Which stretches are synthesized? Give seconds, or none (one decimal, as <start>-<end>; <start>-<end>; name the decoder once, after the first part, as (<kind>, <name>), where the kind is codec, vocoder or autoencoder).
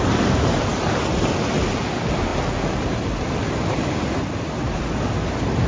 none